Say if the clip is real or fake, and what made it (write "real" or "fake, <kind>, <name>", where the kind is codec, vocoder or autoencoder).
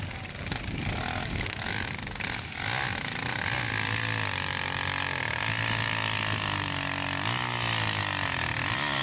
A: real